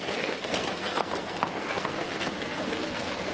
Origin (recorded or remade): remade